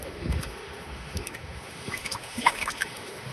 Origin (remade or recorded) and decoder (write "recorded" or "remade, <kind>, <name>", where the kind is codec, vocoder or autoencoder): remade, autoencoder, DAC-VAE